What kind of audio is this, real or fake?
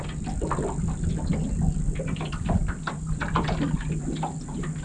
real